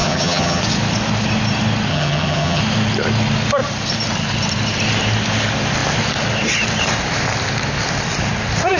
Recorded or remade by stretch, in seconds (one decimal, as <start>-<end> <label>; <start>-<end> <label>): 0.0-0.6 remade; 0.6-1.9 recorded; 1.9-2.6 remade; 2.6-8.8 recorded